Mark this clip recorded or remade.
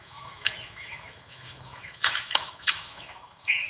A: remade